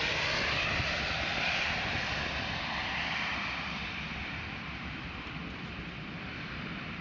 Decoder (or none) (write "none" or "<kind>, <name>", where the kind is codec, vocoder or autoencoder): vocoder, BigVGAN v2